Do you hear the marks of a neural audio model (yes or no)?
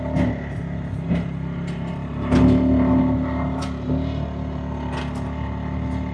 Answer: no